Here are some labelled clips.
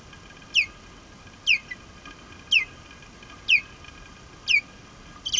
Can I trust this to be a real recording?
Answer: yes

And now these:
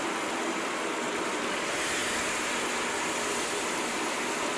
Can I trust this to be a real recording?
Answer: yes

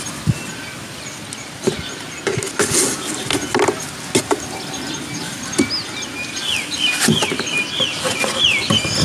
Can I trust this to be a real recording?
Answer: yes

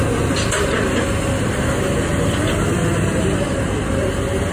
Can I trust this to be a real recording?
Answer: yes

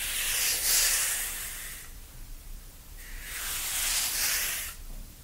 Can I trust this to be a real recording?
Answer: no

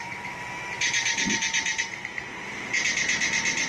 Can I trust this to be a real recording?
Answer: no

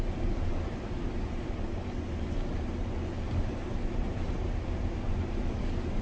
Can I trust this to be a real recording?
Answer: yes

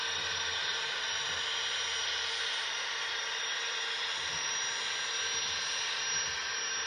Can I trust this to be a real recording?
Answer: yes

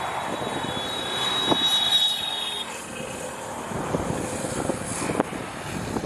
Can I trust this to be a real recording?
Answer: yes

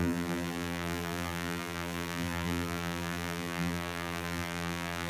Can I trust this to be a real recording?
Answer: no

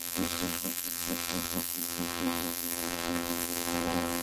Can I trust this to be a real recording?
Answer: no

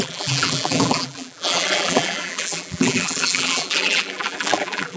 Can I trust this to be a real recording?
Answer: no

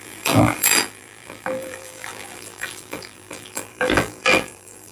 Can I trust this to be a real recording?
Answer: no